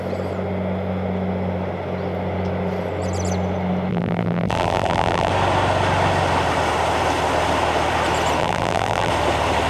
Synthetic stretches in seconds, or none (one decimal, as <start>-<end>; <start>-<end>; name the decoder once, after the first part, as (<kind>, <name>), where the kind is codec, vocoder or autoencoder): 3.9-5.3 (vocoder, BigVGAN v2); 8.4-9.1